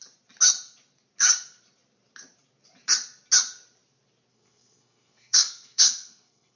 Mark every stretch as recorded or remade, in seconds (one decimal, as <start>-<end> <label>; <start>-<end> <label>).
0.0-4.3 recorded; 4.3-6.6 remade